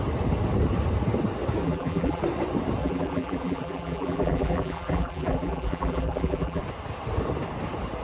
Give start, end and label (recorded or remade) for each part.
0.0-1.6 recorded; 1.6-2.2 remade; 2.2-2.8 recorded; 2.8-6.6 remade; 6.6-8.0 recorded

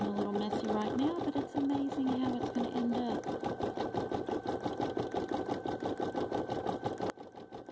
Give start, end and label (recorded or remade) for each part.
0.0-7.7 recorded

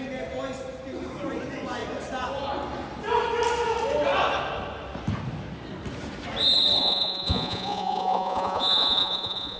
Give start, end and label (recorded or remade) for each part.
0.0-6.8 recorded; 6.8-9.6 remade

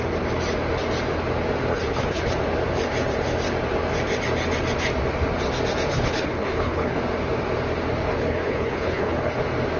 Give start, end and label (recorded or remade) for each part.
0.0-1.7 recorded; 1.7-2.3 remade; 2.3-5.9 recorded; 5.9-7.0 remade; 7.0-8.1 recorded; 8.1-9.4 remade; 9.4-9.8 recorded